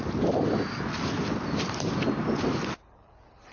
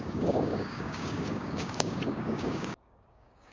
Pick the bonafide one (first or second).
first